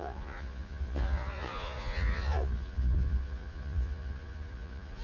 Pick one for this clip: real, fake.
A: fake